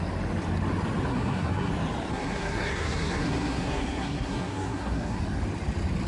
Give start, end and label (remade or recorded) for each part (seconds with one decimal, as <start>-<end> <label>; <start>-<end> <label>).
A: 0.0-1.1 recorded; 1.1-1.7 remade; 1.7-2.1 recorded; 2.1-5.2 remade; 5.2-6.1 recorded